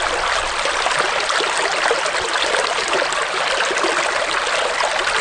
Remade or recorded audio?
recorded